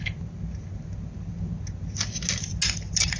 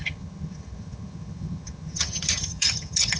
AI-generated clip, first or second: second